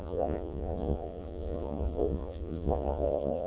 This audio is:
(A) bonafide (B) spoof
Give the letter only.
B